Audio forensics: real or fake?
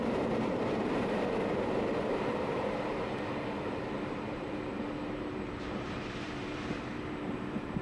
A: fake